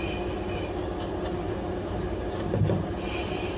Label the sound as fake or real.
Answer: real